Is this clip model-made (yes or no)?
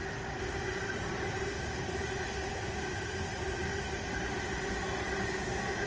no